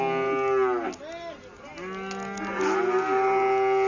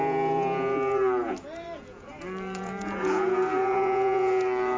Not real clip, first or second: second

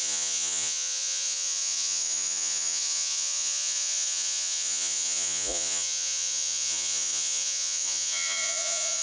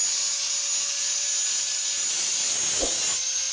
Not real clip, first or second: first